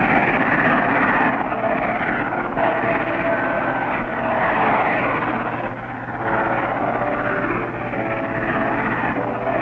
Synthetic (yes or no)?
no